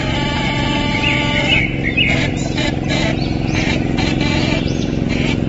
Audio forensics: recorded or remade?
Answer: recorded